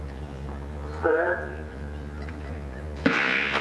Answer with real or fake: fake